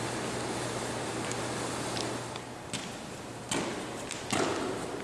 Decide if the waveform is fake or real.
real